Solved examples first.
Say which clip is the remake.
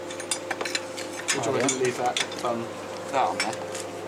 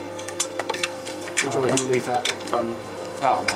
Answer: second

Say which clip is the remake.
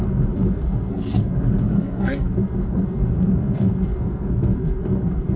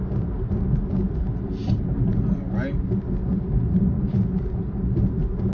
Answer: first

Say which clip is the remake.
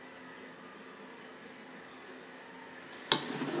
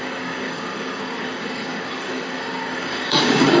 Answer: second